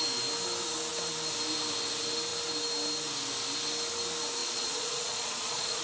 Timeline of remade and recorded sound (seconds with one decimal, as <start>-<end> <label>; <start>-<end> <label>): 0.0-4.4 recorded; 4.4-5.8 remade